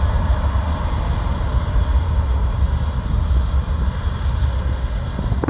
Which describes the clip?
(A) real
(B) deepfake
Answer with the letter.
A